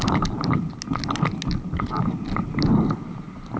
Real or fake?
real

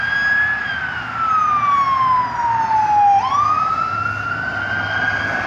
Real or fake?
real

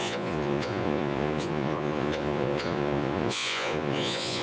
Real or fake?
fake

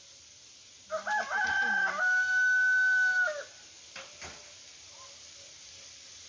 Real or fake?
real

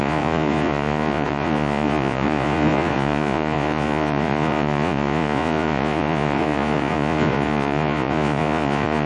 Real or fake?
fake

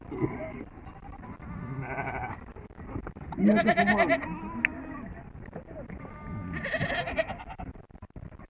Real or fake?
real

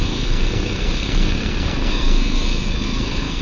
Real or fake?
fake